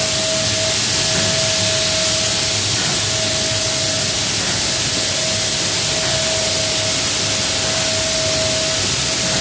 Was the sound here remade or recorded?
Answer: recorded